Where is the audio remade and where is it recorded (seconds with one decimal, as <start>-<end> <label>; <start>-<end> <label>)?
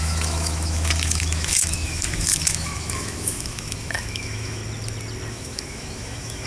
0.0-4.6 remade; 4.6-5.3 recorded; 5.3-6.5 remade